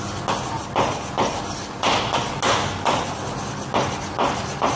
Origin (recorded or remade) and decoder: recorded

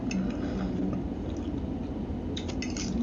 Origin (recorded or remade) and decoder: recorded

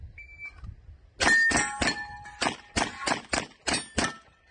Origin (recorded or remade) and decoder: recorded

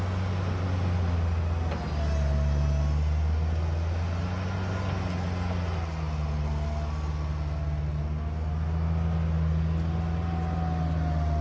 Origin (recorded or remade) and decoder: recorded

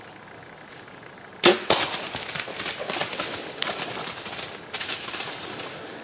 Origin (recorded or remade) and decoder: recorded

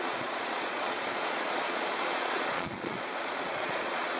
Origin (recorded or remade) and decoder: remade, vocoder, Vocos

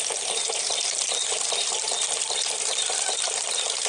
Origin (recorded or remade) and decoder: recorded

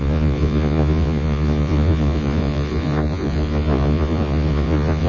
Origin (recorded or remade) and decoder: remade, vocoder, Vocos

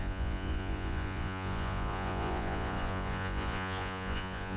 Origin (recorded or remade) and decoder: remade, vocoder, Vocos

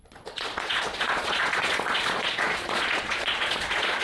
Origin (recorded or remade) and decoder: remade, vocoder, Vocos